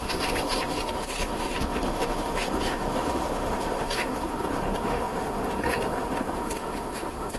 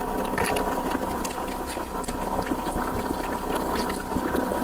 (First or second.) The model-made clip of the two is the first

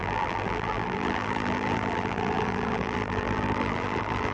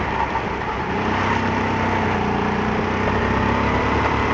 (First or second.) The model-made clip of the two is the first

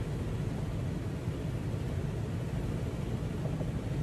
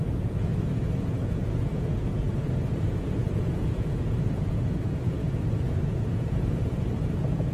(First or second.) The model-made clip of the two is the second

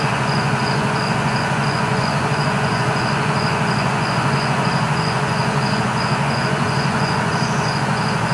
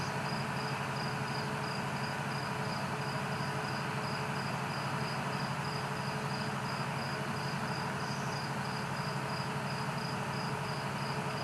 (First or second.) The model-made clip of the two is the first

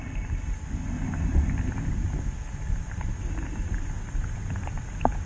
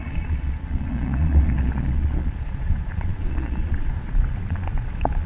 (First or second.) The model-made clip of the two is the second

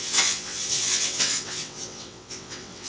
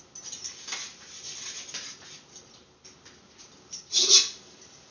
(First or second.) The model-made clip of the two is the first